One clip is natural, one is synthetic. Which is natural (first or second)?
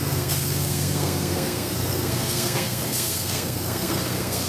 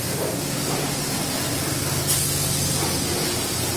second